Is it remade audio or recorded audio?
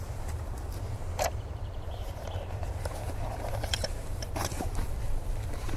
remade